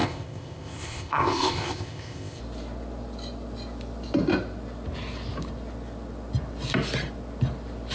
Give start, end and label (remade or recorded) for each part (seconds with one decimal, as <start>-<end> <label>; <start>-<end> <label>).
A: 0.0-2.4 remade; 2.4-7.9 recorded